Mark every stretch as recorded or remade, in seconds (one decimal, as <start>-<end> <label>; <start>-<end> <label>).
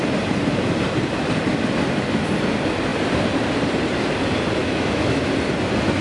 0.0-4.6 recorded; 4.6-5.3 remade; 5.3-6.0 recorded